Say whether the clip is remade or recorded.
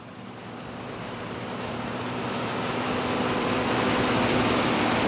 recorded